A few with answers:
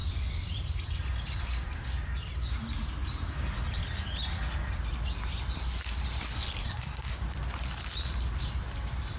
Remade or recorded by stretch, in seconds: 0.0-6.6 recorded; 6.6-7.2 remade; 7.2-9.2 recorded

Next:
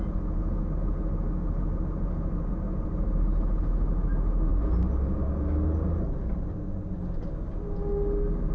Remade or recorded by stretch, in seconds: 0.0-8.5 recorded

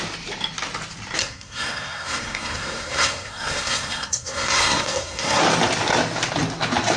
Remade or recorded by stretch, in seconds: 0.0-1.2 recorded; 1.2-5.4 remade; 5.4-7.0 recorded

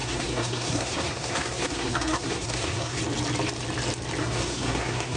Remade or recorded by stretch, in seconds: 0.0-3.0 remade; 3.0-4.2 recorded; 4.2-5.2 remade